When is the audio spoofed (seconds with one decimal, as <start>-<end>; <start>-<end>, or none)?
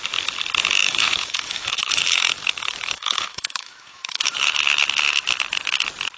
0.8-4.5